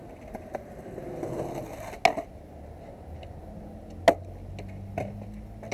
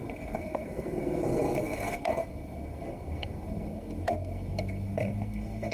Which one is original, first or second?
first